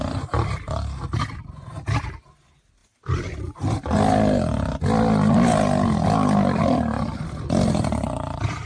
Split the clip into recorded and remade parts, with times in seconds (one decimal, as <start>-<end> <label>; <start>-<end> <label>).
0.0-8.7 recorded